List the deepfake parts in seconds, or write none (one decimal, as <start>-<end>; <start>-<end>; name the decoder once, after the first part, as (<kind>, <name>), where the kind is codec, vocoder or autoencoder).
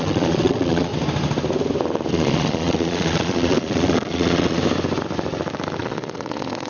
0.0-0.9 (vocoder, Vocos); 2.1-4.6; 5.8-6.7